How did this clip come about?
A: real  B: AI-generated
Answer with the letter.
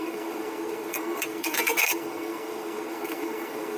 B